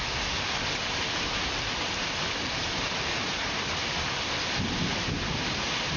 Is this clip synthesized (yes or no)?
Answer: no